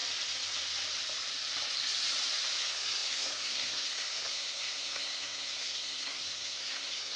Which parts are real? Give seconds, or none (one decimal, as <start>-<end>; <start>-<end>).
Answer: 0.0-2.6